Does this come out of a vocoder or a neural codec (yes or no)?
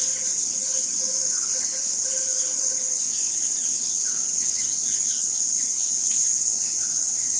yes